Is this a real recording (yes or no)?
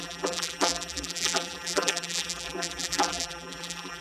no